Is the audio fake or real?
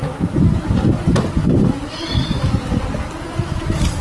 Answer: real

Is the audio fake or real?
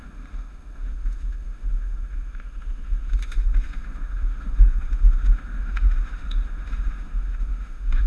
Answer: fake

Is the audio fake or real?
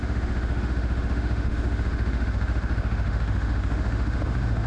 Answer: fake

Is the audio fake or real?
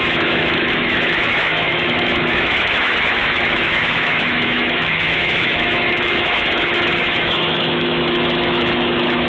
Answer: fake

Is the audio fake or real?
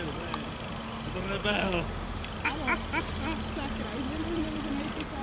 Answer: real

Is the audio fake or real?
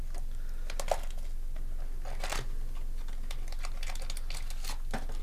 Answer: real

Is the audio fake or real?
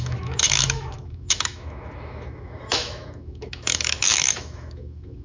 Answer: fake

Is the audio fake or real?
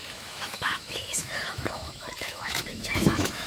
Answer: fake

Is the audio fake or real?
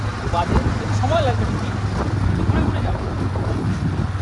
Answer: real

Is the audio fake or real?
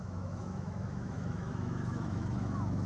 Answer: fake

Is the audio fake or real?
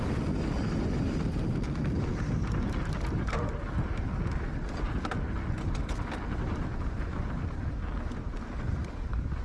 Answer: real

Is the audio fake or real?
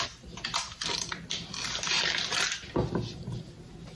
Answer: real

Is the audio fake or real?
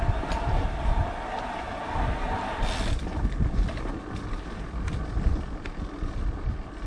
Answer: real